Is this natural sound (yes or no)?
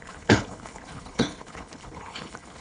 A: no